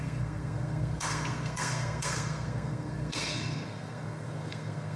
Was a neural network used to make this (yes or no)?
yes